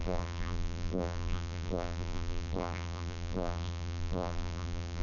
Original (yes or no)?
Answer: no